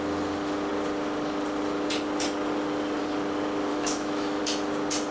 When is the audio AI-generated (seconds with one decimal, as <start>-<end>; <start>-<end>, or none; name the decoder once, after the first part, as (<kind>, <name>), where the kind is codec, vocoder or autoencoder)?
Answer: 3.7-4.4 (autoencoder, DAC-VAE)